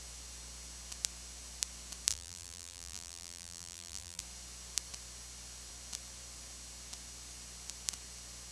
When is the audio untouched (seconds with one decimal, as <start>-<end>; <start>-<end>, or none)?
0.0-2.1; 4.2-8.5